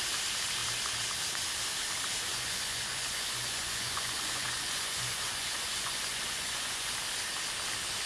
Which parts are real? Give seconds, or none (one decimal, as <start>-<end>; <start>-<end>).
0.0-2.3; 6.9-8.1

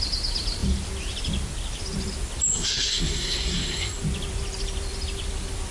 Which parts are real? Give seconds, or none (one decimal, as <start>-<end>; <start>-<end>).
0.0-2.5; 4.0-5.7

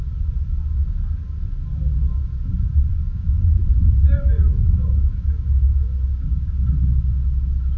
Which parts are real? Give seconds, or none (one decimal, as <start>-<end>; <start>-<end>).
0.0-2.9; 3.6-4.5; 5.9-7.8

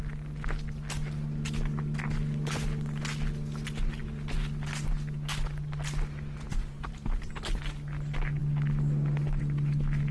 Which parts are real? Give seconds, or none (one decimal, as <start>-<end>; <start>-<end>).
0.0-6.5; 7.3-10.1

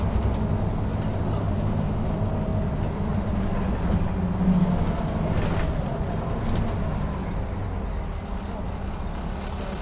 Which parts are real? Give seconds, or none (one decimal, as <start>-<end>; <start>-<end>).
0.0-1.4; 2.1-9.8